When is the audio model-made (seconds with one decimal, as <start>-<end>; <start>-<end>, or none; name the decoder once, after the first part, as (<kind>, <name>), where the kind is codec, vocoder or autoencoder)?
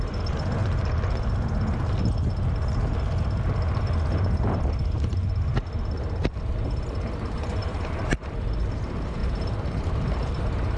0.0-0.6 (vocoder, BigVGAN v2); 4.5-5.1; 6.3-10.8